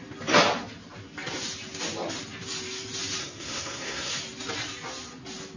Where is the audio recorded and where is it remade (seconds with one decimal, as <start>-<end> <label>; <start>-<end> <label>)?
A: 0.0-3.2 recorded; 3.2-4.2 remade; 4.2-5.6 recorded